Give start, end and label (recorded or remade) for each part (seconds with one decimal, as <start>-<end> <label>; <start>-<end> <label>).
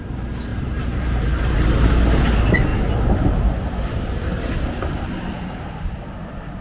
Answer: 0.0-0.5 recorded; 0.5-1.9 remade; 1.9-6.6 recorded